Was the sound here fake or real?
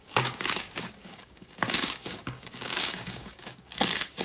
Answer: fake